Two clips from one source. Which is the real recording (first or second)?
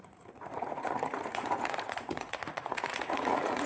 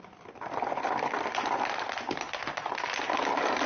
second